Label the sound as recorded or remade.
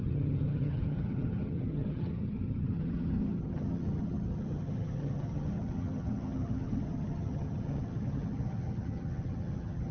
remade